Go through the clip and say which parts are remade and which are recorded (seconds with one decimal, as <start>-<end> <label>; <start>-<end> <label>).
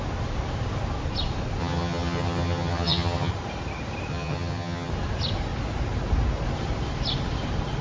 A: 0.0-1.6 recorded; 1.6-3.3 remade; 3.3-4.1 recorded; 4.1-4.9 remade; 4.9-7.8 recorded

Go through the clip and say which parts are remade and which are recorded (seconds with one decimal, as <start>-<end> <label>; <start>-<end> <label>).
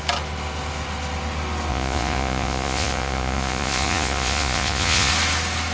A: 0.0-1.7 recorded; 1.7-5.1 remade; 5.1-5.7 recorded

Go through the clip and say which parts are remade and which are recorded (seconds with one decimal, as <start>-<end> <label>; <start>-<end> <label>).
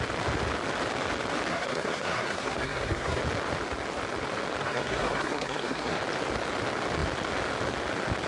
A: 0.0-1.5 recorded; 1.5-3.2 remade; 3.2-4.6 recorded; 4.6-6.0 remade; 6.0-8.3 recorded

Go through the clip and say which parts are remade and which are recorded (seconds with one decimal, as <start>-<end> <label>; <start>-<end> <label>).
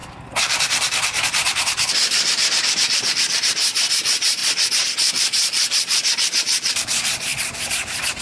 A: 0.0-4.4 remade; 4.4-5.1 recorded; 5.1-7.3 remade; 7.3-8.2 recorded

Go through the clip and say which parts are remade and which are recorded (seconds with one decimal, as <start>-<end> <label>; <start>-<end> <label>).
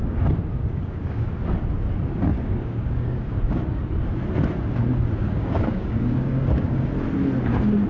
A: 0.0-0.6 recorded; 0.6-1.3 remade; 1.3-2.3 recorded; 2.3-3.6 remade; 3.6-5.2 recorded; 5.2-6.9 remade; 6.9-7.9 recorded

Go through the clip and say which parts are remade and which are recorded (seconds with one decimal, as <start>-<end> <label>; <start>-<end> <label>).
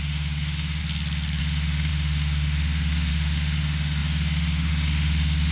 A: 0.0-0.8 remade; 0.8-1.4 recorded; 1.4-5.5 remade